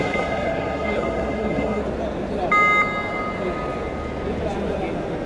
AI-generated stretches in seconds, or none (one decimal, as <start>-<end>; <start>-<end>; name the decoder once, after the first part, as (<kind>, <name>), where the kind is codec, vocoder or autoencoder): 0.0-1.8 (codec, SNAC)